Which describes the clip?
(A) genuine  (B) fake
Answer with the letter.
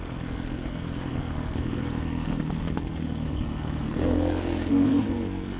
B